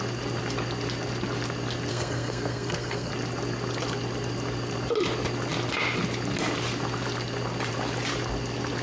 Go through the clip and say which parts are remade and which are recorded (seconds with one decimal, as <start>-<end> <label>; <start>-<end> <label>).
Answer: 0.0-1.9 recorded; 1.9-3.1 remade; 3.1-8.8 recorded